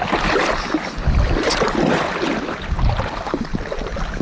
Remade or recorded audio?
recorded